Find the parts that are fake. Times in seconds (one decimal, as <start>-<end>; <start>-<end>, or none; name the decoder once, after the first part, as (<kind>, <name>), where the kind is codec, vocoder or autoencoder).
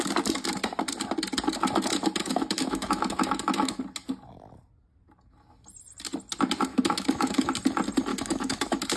2.2-3.8 (autoencoder, DAC-VAE); 6.7-7.5; 8.1-9.0